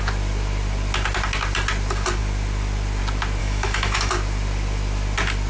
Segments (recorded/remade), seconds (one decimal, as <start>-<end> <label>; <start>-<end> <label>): 0.0-3.4 recorded; 3.4-4.1 remade; 4.1-5.5 recorded